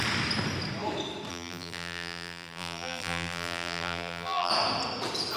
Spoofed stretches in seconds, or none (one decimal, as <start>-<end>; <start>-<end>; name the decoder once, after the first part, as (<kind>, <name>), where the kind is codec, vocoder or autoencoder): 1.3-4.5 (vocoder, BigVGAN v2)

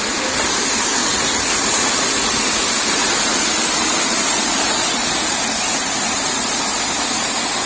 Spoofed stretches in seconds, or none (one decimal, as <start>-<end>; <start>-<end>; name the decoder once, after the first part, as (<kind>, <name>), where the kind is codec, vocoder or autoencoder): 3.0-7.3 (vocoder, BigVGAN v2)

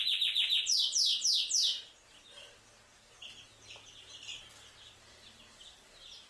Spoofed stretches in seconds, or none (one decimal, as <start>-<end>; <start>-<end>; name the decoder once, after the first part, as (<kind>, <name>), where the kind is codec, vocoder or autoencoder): 0.0-1.1 (vocoder, BigVGAN v2); 4.9-6.3

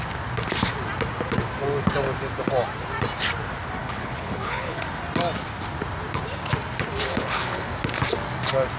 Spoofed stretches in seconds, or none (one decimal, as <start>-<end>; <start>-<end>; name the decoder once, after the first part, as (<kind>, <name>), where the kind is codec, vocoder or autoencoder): 3.8-4.8 (codec, HILCodec); 7.1-7.7

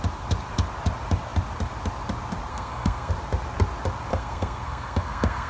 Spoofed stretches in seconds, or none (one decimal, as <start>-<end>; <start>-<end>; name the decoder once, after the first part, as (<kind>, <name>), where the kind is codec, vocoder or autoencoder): 2.5-3.1 (codec, SNAC); 4.1-5.5